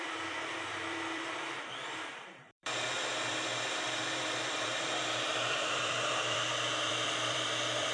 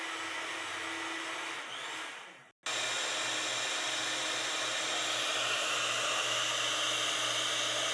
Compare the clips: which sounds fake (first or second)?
first